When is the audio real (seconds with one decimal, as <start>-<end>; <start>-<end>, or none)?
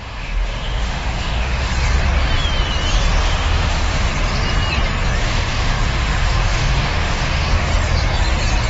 1.7-3.2; 4.1-5.2; 7.7-8.7